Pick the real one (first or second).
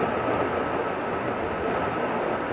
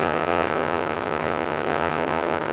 first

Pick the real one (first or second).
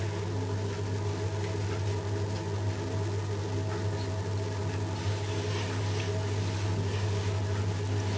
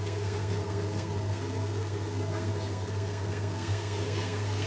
first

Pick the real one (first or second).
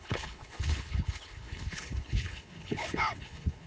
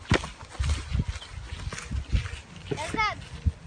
second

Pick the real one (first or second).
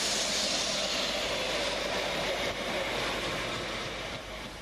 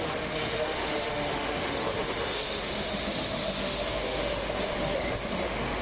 first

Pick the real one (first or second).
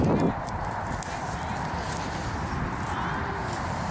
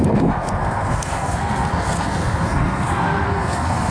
first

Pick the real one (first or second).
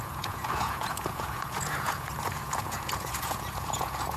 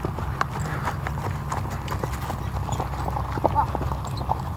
second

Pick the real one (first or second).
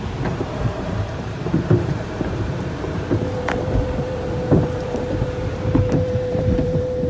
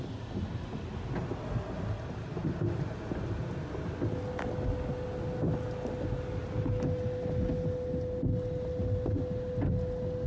second